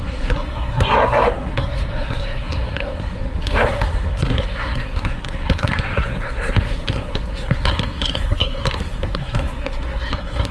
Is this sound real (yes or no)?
no